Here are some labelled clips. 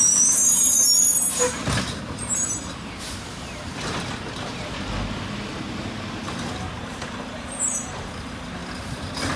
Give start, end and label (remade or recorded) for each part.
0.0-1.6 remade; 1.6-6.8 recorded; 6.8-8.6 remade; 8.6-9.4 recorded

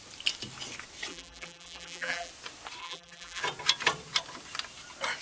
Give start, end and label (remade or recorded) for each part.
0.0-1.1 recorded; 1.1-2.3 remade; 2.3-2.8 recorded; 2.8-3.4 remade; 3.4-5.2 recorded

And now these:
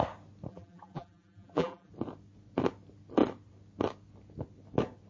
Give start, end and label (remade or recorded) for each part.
0.0-0.5 recorded; 0.5-1.9 remade; 1.9-5.1 recorded

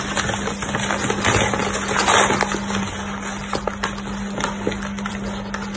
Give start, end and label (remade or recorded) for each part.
0.0-5.8 recorded

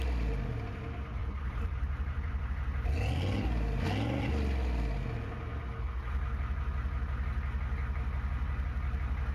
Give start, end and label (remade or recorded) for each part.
0.0-1.2 recorded; 1.2-2.4 remade; 2.4-9.3 recorded